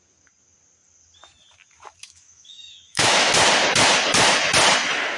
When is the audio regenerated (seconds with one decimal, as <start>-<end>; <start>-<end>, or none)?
2.0-3.3

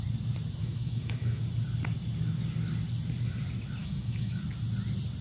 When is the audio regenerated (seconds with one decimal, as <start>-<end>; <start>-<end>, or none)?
0.6-1.4; 3.8-4.4

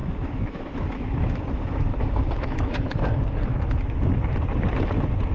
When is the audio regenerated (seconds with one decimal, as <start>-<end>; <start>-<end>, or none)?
0.0-3.2

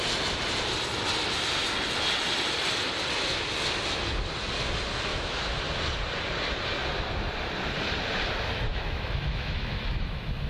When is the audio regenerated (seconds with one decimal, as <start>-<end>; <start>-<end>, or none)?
5.1-5.6; 8.7-10.5

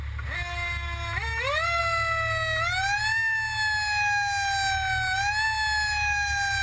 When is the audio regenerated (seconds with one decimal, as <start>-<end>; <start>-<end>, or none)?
none

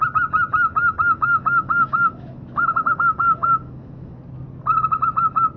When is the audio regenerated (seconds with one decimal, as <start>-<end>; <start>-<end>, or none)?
0.8-4.2